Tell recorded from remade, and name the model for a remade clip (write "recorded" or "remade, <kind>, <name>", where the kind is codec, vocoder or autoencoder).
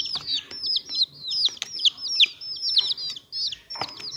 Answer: recorded